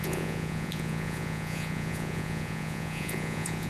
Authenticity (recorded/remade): remade